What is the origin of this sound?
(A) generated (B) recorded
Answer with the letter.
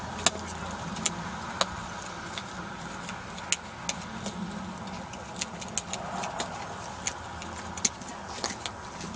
B